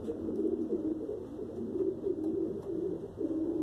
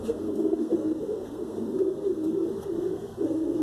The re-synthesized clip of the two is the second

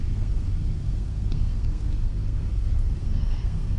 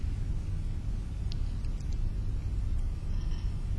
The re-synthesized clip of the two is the first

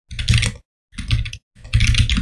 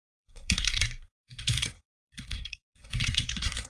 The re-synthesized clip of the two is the second